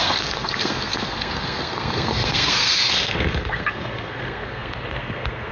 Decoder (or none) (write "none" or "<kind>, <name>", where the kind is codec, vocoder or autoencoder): codec, SNAC